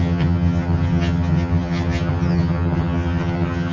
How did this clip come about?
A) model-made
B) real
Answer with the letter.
A